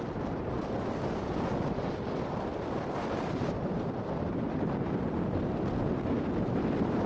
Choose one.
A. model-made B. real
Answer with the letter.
B